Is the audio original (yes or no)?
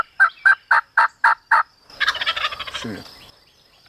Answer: no